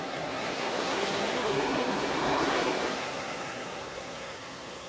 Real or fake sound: fake